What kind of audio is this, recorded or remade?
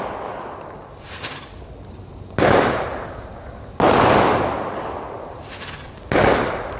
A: recorded